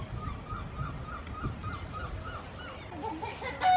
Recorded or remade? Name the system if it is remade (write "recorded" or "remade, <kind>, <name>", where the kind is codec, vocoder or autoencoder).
recorded